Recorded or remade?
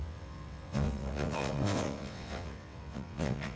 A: remade